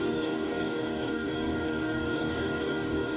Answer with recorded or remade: remade